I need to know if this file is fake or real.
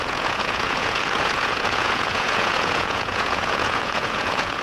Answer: fake